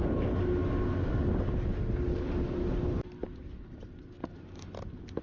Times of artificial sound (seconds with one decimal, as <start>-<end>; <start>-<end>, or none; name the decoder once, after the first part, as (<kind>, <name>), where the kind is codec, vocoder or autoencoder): none